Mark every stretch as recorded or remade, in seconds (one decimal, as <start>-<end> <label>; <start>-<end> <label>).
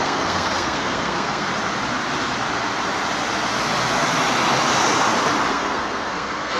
0.0-1.5 remade; 1.5-5.5 recorded; 5.5-6.6 remade